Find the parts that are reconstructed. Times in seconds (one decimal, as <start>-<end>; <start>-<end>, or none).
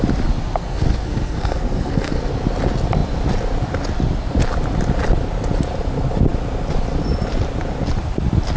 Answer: 0.6-2.3